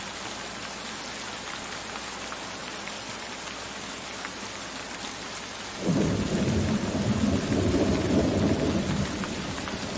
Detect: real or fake real